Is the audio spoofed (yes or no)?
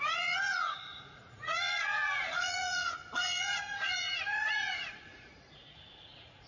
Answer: yes